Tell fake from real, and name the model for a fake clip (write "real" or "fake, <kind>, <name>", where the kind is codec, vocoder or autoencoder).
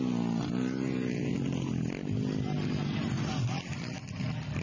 real